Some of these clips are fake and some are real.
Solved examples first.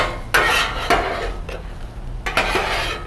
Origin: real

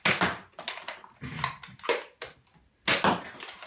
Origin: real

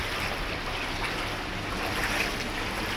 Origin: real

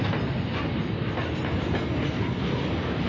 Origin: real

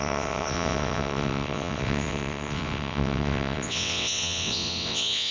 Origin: fake